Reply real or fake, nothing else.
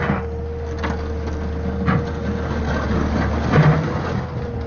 real